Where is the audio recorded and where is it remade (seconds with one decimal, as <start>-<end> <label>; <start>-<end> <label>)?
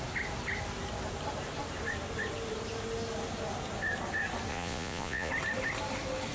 0.0-4.5 recorded; 4.5-5.3 remade; 5.3-6.3 recorded